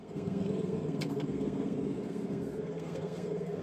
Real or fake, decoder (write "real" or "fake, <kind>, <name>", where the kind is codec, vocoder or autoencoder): fake, codec, SNAC